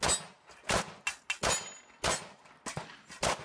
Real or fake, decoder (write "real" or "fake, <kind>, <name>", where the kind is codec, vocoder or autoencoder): real